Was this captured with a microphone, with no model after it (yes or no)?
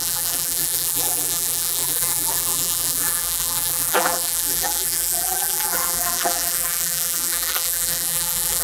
no